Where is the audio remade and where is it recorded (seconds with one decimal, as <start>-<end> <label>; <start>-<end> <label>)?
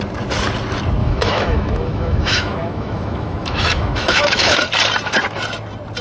0.0-1.0 recorded; 1.0-4.6 remade; 4.6-6.0 recorded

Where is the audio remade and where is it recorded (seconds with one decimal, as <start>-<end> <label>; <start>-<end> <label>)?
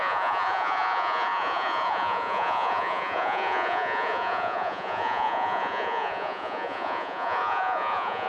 0.0-8.3 remade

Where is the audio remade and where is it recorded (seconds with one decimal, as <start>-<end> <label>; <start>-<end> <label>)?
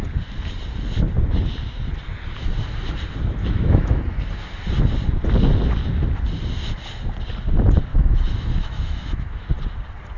0.0-3.4 recorded; 3.4-4.0 remade; 4.0-7.9 recorded; 7.9-9.5 remade; 9.5-10.2 recorded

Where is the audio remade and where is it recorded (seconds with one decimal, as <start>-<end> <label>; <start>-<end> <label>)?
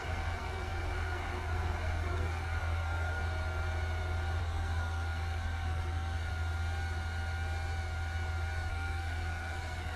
0.0-3.2 remade; 3.2-4.4 recorded; 4.4-6.3 remade; 6.3-8.7 recorded; 8.7-10.0 remade